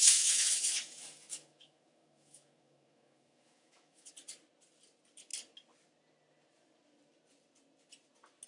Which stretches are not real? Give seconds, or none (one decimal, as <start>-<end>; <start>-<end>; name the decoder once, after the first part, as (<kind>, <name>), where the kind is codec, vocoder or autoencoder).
0.0-4.1 (autoencoder, DAC-VAE)